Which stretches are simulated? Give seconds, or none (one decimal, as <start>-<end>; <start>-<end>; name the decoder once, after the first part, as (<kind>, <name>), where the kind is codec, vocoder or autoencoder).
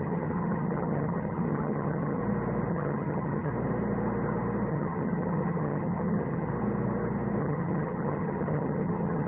0.0-2.2 (vocoder, HiFi-GAN); 2.7-3.5; 4.7-6.5; 7.4-9.3